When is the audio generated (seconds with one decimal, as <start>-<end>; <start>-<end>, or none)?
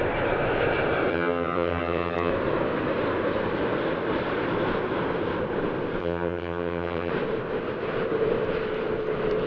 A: 1.1-2.3; 6.0-7.1